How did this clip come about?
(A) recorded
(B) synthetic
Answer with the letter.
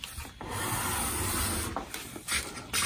A